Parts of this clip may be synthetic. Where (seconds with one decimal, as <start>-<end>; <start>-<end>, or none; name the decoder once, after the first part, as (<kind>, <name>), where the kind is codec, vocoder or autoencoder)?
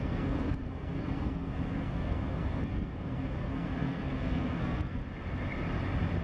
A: 0.0-5.0 (codec, SNAC)